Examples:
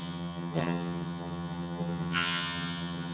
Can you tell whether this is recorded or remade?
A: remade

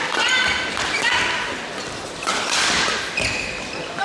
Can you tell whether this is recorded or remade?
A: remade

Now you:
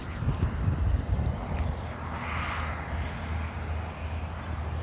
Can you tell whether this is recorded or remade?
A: recorded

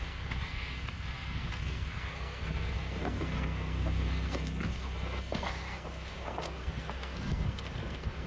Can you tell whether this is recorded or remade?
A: remade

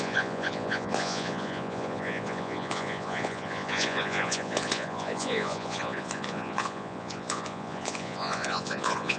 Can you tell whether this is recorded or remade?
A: remade